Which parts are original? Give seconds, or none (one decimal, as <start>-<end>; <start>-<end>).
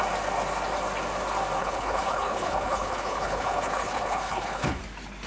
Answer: 0.0-1.6; 4.8-5.3